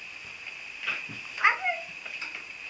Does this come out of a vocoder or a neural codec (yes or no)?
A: no